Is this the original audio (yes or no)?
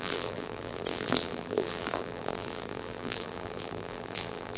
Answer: no